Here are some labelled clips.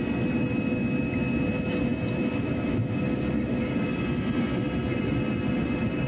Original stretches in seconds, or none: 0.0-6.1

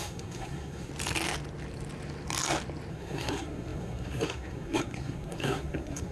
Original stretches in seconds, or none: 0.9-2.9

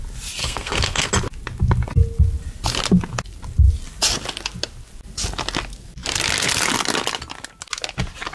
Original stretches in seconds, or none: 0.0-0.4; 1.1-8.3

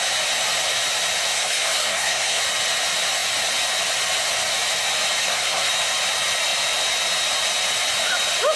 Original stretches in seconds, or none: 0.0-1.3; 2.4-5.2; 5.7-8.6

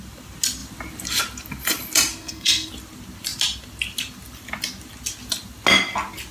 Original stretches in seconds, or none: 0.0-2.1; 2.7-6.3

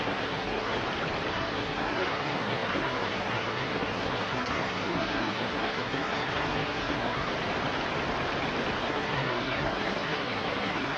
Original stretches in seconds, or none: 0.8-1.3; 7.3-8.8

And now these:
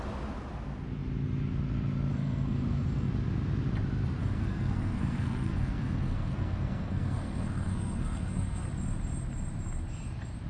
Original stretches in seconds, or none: 0.0-2.1; 3.1-4.2; 8.7-10.5